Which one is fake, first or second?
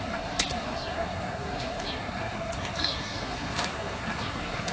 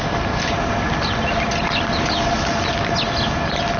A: first